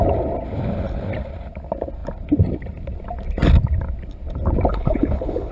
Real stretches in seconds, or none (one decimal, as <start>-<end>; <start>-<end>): 0.0-4.7